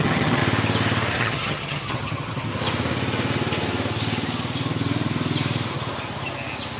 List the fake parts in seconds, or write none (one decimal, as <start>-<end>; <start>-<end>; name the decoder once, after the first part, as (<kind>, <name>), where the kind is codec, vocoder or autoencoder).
0.0-0.4 (vocoder, HiFi-GAN); 1.2-2.5